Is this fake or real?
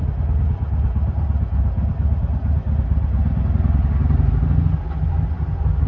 real